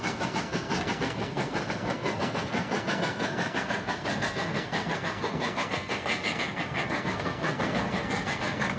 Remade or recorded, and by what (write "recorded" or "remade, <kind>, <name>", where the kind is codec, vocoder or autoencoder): remade, codec, SNAC